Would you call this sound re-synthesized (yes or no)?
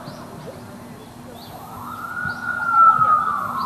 no